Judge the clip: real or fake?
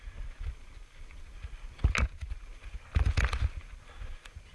real